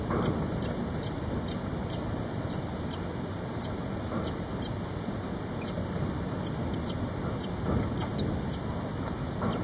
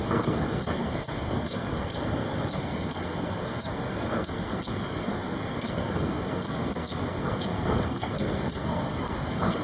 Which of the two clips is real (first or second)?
first